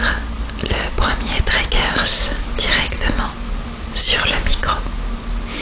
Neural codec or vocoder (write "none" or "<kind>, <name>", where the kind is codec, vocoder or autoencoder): none